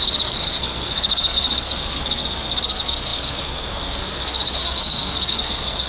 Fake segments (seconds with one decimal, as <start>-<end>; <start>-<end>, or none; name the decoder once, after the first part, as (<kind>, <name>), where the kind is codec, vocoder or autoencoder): 0.0-5.9 (codec, SNAC)